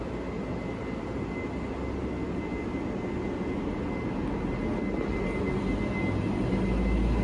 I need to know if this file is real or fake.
real